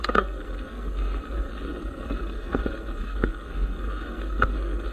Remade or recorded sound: remade